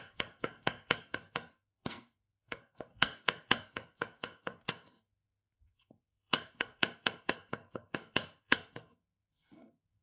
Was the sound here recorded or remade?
remade